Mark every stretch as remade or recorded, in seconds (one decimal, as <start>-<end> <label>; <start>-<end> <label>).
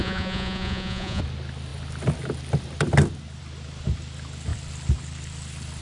0.0-1.2 remade; 1.2-5.8 recorded